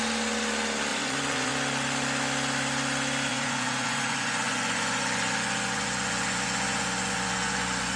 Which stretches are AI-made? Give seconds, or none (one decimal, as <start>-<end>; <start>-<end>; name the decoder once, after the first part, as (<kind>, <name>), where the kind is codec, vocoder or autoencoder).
0.9-1.5 (vocoder, Vocos); 3.3-8.0